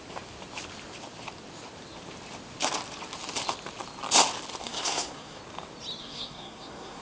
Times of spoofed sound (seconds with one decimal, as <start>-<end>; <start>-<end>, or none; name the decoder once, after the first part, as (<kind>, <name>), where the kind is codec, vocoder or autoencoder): 4.6-5.4 (codec, SNAC); 6.0-7.0